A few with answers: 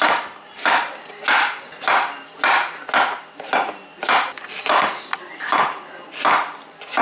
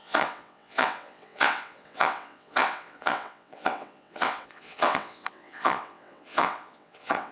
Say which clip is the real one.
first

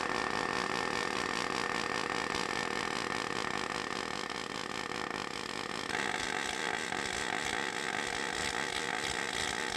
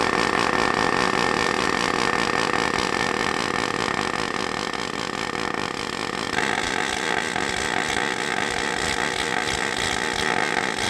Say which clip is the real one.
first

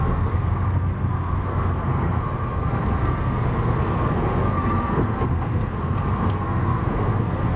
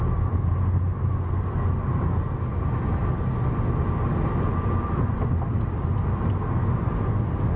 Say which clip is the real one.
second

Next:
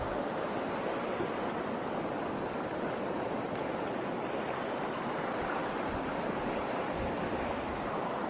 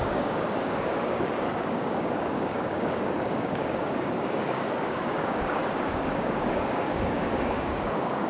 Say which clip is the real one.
first